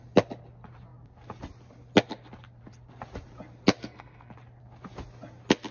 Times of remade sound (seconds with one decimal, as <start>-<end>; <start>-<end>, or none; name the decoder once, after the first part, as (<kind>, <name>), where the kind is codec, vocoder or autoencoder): 3.8-4.3 (codec, SNAC)